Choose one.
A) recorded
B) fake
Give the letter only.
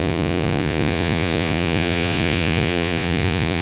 B